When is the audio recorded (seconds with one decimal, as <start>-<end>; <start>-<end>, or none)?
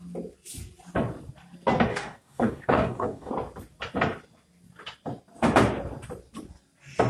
0.0-1.9; 3.3-7.1